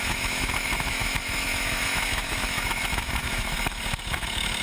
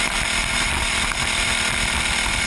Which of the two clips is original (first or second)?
second